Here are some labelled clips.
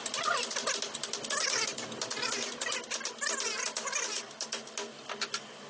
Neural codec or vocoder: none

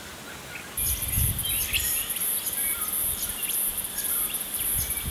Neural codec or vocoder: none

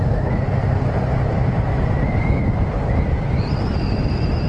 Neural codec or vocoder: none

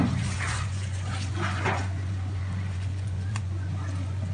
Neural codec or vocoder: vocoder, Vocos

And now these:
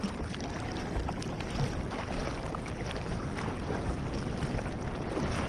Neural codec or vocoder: none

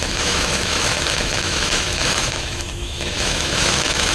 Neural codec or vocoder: autoencoder, DAC-VAE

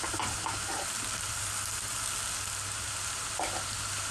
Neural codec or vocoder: none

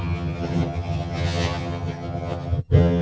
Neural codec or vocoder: vocoder, HiFi-GAN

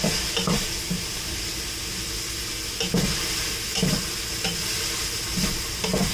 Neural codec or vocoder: none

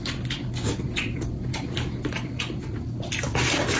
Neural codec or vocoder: none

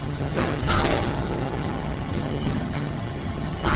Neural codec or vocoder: vocoder, HiFi-GAN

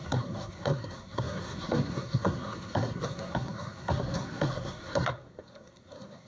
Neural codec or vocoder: codec, SNAC